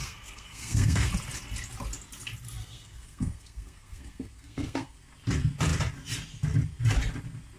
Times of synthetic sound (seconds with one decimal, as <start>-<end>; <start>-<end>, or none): 0.0-1.1; 2.6-5.0